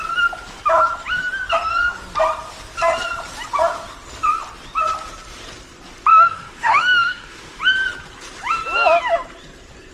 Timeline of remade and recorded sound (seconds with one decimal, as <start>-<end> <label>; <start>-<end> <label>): 0.0-6.1 recorded; 6.1-7.6 remade; 7.6-9.9 recorded